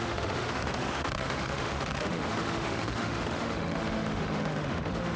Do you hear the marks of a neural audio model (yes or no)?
yes